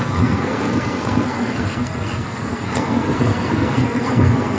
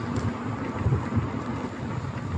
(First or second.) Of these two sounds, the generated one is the first